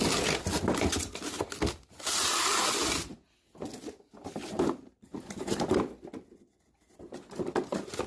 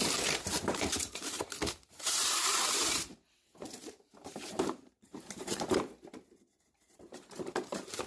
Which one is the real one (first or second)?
first